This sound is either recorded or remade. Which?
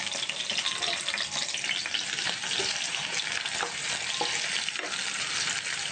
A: recorded